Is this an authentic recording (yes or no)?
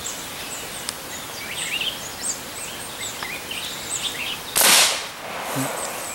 yes